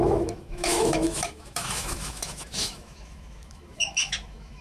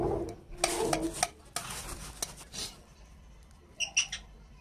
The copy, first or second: first